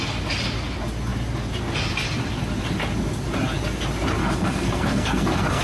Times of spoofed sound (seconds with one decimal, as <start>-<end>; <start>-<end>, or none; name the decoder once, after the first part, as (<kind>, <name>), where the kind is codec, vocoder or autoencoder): 4.2-5.6 (codec, SNAC)